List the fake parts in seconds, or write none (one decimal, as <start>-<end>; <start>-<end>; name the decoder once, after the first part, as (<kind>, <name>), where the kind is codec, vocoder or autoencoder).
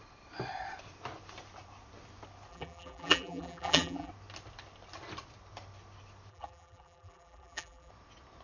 2.5-4.1 (vocoder, BigVGAN v2); 6.3-7.9